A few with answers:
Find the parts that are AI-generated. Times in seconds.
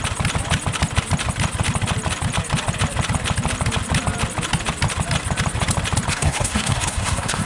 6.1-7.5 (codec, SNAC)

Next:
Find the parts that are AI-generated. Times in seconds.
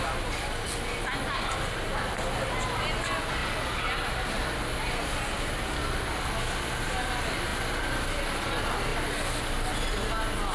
none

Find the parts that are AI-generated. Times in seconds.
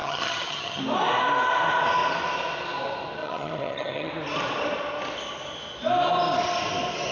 0.0-0.8 (vocoder, HiFi-GAN); 3.2-4.1